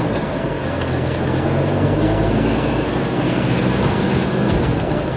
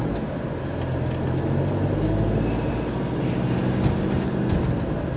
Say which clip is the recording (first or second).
second